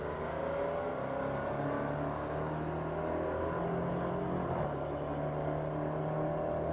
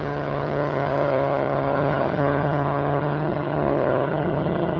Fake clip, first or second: second